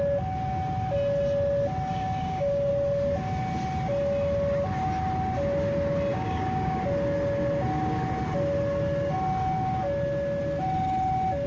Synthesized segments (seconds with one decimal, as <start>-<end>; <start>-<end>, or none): 1.9-2.7; 6.1-6.8